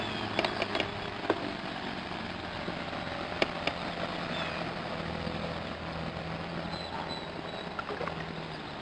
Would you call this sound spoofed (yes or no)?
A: no